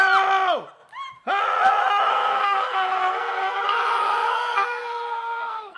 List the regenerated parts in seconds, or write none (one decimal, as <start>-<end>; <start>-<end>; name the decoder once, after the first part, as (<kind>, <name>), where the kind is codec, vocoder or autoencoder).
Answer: 2.1-5.8 (codec, SNAC)